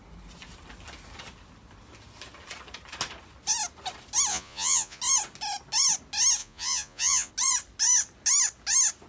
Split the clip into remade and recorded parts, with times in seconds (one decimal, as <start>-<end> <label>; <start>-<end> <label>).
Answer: 0.0-4.3 recorded; 4.3-5.0 remade; 5.0-6.4 recorded; 6.4-7.3 remade; 7.3-9.1 recorded